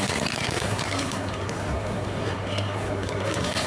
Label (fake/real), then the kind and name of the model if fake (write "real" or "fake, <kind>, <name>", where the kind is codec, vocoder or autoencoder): fake, codec, SNAC